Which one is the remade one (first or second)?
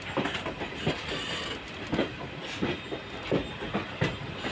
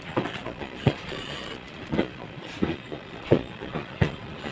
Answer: second